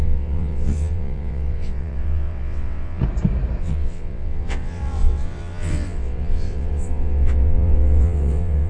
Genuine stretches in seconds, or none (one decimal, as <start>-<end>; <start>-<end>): 3.0-3.6